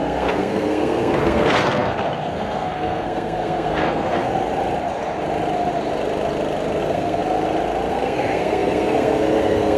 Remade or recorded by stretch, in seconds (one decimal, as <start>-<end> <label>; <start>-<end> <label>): 0.0-4.3 remade; 4.3-6.8 recorded; 6.8-7.2 remade; 7.2-7.9 recorded; 7.9-9.8 remade